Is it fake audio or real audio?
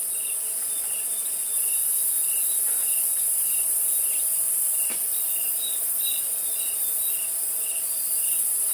real